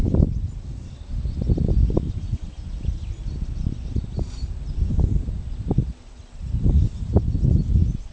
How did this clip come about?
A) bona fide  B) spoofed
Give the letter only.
A